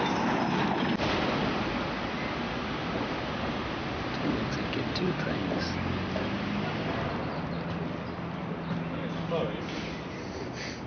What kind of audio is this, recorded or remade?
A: recorded